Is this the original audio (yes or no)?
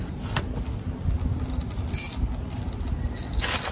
yes